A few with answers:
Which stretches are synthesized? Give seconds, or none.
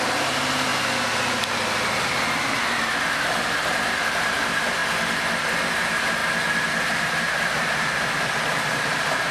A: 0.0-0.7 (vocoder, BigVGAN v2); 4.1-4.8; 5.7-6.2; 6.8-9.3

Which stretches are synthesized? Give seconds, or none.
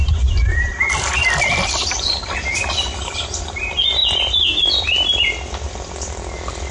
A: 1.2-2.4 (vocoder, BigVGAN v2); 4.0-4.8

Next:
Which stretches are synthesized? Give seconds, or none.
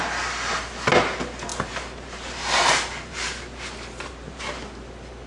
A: 1.5-4.4 (vocoder, BigVGAN v2)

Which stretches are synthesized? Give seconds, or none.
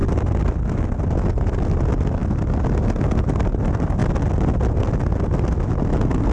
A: none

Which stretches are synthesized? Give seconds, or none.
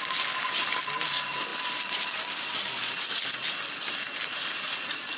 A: none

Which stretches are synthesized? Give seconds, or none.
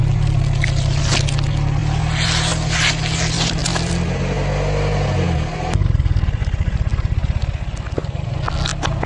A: none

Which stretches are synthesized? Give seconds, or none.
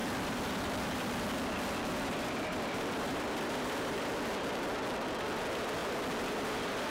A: 0.0-4.1 (vocoder, BigVGAN v2)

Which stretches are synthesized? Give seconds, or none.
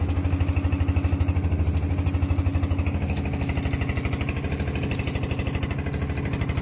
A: none